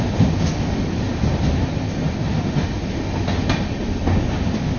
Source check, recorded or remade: recorded